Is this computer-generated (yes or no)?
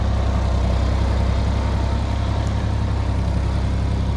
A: no